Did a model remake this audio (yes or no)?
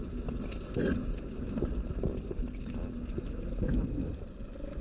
no